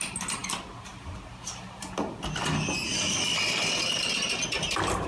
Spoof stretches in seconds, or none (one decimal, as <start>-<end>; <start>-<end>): none

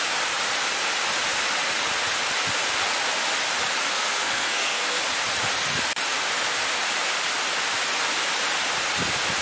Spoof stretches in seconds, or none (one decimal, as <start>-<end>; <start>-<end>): 3.9-5.0

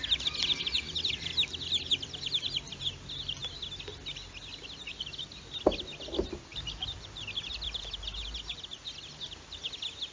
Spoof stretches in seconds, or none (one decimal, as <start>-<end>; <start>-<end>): 6.5-7.2

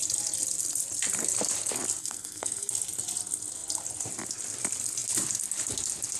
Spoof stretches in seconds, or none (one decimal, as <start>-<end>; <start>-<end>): 2.0-2.7

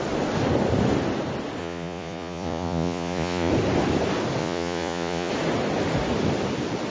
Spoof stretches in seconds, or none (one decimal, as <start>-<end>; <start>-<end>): 1.6-3.5; 4.4-5.3

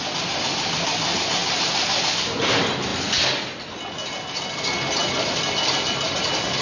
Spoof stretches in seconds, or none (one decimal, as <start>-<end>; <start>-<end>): 1.4-2.1; 5.0-5.9

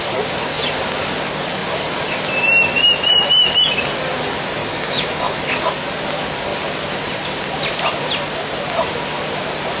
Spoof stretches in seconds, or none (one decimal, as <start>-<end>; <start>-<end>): 4.6-5.4

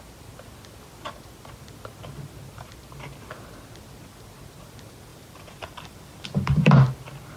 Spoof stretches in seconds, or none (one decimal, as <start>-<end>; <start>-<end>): 5.1-6.8